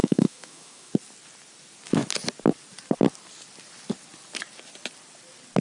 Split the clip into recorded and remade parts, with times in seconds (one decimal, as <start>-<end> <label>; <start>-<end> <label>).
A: 0.0-0.9 remade; 0.9-5.6 recorded